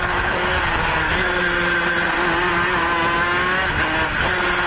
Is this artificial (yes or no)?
no